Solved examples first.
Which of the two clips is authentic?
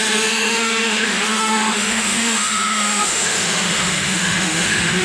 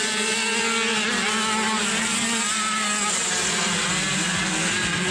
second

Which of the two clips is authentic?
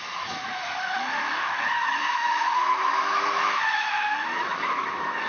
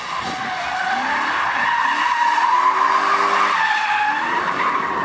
second